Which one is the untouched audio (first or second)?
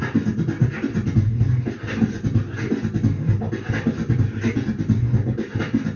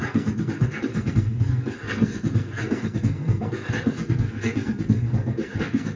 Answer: first